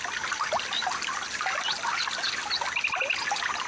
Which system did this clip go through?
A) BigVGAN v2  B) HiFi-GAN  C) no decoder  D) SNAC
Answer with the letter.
C